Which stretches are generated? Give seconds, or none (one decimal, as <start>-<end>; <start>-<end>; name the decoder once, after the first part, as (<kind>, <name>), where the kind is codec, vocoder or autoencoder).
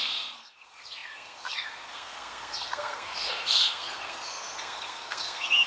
0.0-5.7 (codec, SNAC)